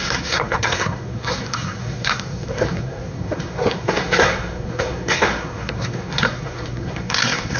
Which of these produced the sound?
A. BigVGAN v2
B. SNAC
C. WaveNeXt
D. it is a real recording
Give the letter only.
B